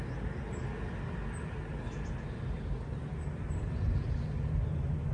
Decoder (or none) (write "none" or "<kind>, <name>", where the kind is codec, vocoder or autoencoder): none